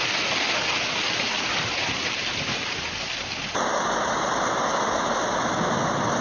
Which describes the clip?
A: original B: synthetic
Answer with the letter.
A